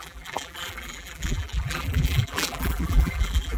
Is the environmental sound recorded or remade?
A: remade